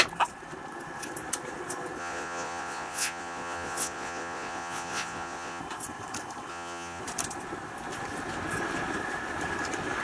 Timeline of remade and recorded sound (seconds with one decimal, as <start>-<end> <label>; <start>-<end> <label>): 0.0-2.0 recorded; 2.0-5.6 remade; 5.6-6.5 recorded; 6.5-7.0 remade; 7.0-10.0 recorded